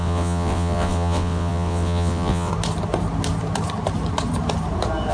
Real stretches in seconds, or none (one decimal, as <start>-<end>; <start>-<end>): 2.5-5.1